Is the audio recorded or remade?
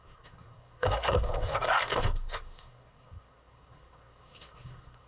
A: remade